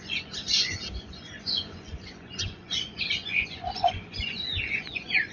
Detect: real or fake fake